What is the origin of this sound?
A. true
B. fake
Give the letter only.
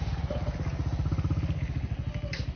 A